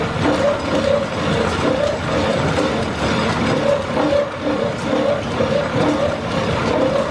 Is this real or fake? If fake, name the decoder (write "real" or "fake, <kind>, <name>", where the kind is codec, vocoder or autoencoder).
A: real